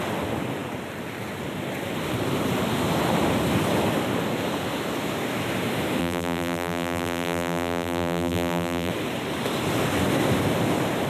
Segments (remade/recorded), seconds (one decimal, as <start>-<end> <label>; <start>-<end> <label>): 0.0-6.0 recorded; 6.0-8.9 remade; 8.9-11.1 recorded